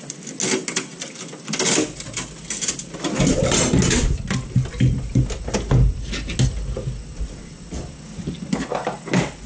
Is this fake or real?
real